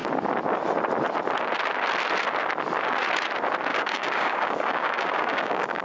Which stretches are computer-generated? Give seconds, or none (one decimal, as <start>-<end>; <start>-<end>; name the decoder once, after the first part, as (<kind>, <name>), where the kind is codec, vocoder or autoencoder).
3.7-5.8 (codec, DAC)